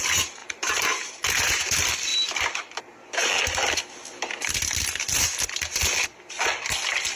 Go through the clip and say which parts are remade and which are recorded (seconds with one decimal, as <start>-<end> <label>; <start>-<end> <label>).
0.0-0.4 recorded; 0.4-1.7 remade; 1.7-7.2 recorded